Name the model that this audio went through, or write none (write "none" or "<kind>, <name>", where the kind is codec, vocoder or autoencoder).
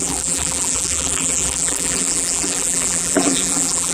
vocoder, BigVGAN v2